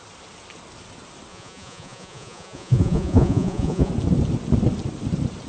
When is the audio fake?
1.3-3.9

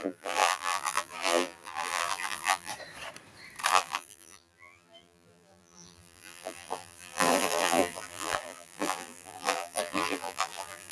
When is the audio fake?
0.0-2.7; 3.7-10.9

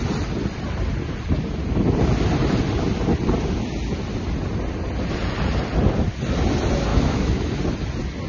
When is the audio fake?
6.9-7.6

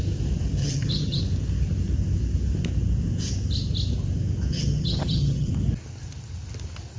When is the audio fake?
0.6-1.2; 4.5-5.5

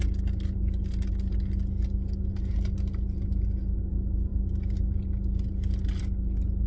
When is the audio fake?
none

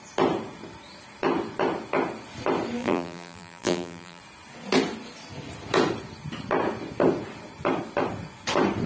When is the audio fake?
2.8-4.2

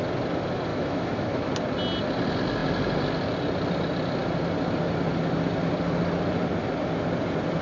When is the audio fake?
0.7-1.5

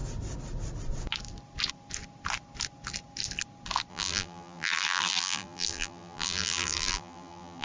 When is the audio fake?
3.9-7.6